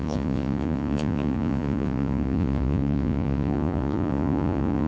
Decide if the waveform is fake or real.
fake